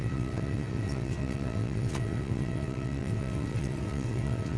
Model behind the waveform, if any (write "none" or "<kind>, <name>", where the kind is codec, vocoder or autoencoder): vocoder, WaveNeXt